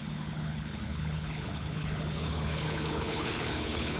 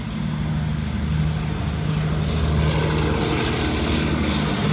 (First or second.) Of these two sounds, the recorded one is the second